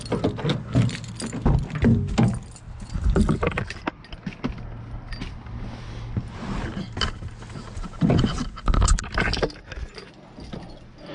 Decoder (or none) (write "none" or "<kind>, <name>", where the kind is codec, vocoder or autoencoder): none